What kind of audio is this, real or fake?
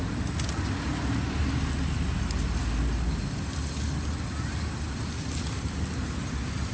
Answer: real